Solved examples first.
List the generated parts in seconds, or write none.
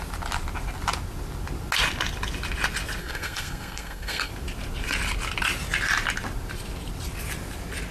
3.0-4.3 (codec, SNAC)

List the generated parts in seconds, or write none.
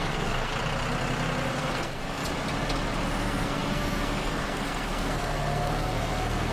0.0-0.5 (codec, SNAC); 1.5-2.2; 3.2-6.5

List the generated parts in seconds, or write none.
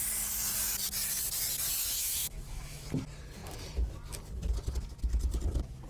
1.8-2.9 (autoencoder, DAC-VAE)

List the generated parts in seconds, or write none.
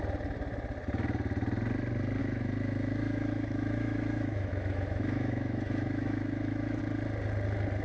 2.2-6.8 (autoencoder, DAC-VAE)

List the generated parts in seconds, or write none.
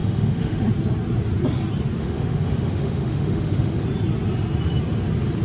0.0-0.6 (autoencoder, DAC-VAE); 2.0-3.8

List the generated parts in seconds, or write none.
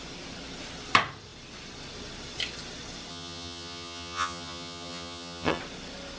3.1-5.6 (vocoder, HiFi-GAN)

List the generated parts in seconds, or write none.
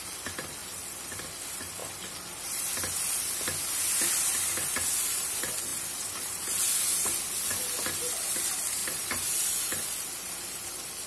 0.6-1.2 (vocoder, BigVGAN v2); 1.8-2.6; 8.8-11.1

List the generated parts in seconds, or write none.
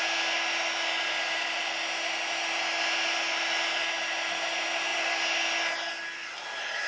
none